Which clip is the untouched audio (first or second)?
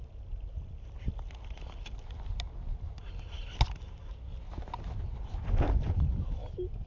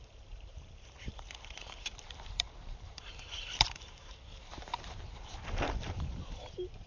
first